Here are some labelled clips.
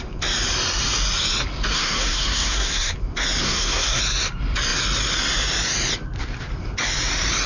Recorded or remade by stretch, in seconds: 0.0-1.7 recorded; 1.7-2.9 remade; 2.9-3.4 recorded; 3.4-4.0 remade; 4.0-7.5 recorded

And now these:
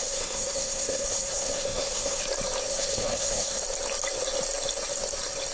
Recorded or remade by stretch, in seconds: 0.0-2.2 remade; 2.2-2.7 recorded; 2.7-3.6 remade; 3.6-5.5 recorded

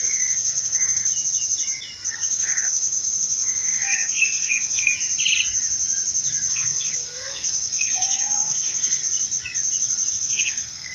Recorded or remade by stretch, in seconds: 0.0-1.1 remade; 1.1-2.1 recorded; 2.1-4.9 remade; 4.9-6.5 recorded; 6.5-9.0 remade; 9.0-10.1 recorded; 10.1-10.9 remade

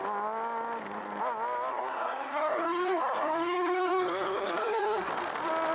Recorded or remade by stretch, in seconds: 0.0-1.7 recorded; 1.7-5.1 remade; 5.1-5.7 recorded